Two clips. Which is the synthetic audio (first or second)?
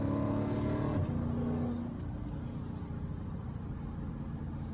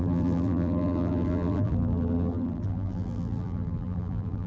second